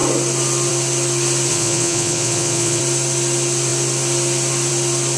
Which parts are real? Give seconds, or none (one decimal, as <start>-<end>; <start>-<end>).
0.0-1.5; 2.8-5.2